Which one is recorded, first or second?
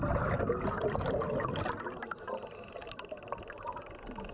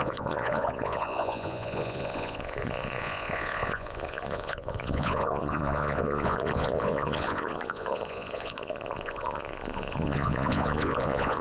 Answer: first